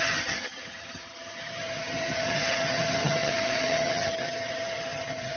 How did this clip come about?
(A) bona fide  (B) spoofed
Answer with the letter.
B